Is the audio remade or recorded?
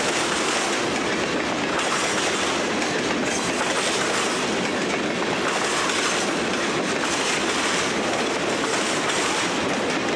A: recorded